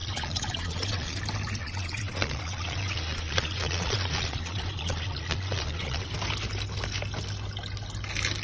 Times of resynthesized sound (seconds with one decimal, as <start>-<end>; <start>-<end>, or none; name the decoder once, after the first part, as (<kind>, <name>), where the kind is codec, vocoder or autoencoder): 0.0-1.2 (vocoder, Vocos); 1.6-6.1